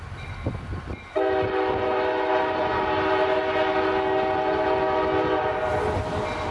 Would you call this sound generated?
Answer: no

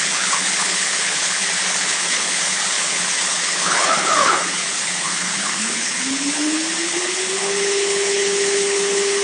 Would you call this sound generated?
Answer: yes